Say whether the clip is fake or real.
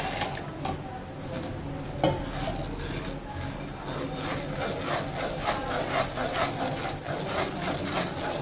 real